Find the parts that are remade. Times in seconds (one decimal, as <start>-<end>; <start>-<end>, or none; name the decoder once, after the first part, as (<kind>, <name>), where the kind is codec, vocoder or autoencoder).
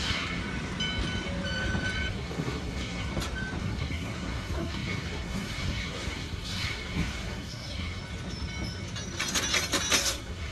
0.0-0.4 (codec, SNAC); 2.1-3.1; 3.6-8.0; 10.0-10.5